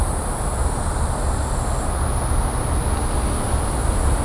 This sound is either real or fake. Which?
real